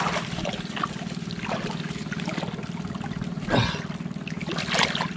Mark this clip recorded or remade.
recorded